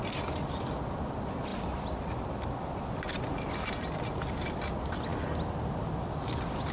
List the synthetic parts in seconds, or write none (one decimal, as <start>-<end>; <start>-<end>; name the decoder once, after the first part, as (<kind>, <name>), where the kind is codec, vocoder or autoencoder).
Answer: none